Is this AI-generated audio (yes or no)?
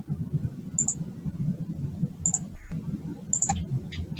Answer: no